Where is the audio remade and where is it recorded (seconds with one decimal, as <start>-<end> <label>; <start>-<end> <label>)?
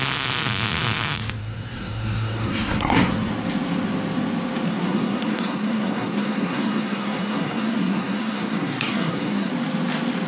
0.0-1.4 recorded; 1.4-3.3 remade; 3.3-4.7 recorded; 4.7-9.5 remade; 9.5-10.3 recorded